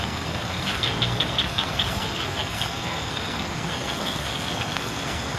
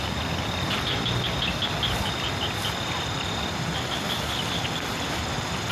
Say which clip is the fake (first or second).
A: first